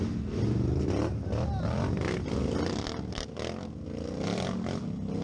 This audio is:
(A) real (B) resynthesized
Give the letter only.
A